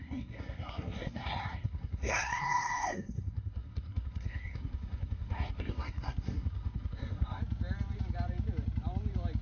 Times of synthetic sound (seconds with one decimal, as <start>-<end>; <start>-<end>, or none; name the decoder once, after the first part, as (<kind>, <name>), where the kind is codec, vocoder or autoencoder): 0.0-7.4 (codec, SNAC)